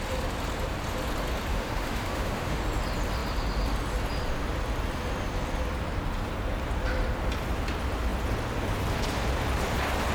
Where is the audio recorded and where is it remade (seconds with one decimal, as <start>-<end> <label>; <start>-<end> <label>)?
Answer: 0.0-1.5 recorded; 1.5-2.6 remade; 2.6-10.1 recorded